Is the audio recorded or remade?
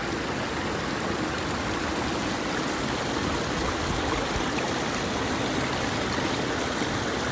recorded